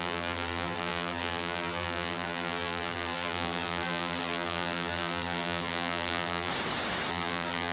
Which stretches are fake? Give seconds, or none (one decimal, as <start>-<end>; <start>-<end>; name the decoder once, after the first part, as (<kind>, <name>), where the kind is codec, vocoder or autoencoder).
0.0-6.5 (vocoder, BigVGAN v2); 7.1-7.7